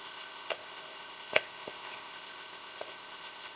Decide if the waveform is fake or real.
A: fake